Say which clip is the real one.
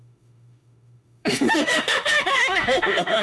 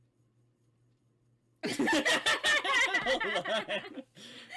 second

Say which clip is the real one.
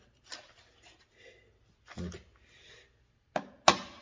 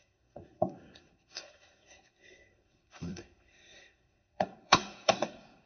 first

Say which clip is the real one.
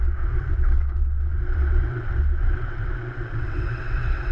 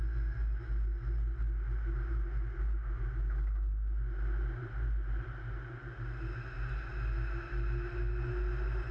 second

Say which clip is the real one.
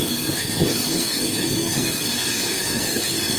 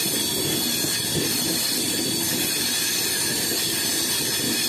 second